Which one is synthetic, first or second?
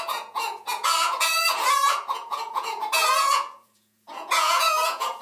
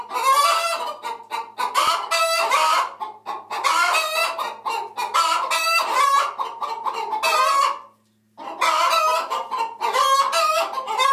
first